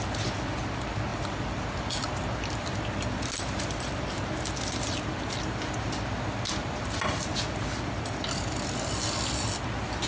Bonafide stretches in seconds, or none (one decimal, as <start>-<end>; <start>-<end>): 0.0-10.1